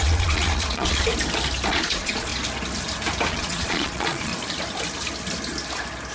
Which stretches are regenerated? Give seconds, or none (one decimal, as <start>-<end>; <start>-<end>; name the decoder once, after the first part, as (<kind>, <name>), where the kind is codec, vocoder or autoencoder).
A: 0.0-1.1 (vocoder, Vocos); 1.7-2.3; 3.3-4.3